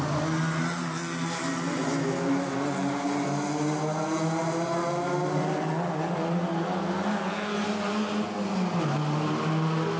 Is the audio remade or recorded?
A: recorded